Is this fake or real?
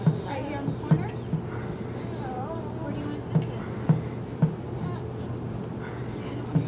real